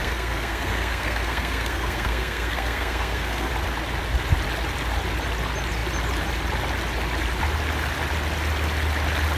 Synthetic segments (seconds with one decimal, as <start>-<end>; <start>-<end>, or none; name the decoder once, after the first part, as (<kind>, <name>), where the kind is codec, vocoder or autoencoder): 0.0-3.5 (codec, SNAC)